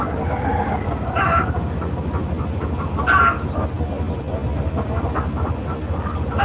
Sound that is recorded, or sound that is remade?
recorded